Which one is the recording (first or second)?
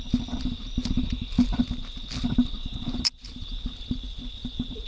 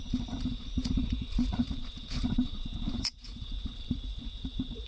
first